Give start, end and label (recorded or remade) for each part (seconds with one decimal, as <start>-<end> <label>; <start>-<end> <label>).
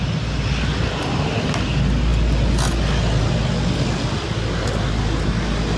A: 0.0-5.8 recorded